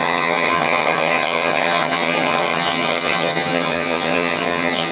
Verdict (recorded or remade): remade